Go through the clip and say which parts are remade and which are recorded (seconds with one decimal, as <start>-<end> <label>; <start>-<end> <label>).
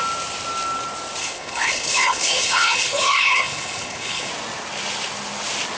0.0-1.2 recorded; 1.2-4.3 remade; 4.3-5.8 recorded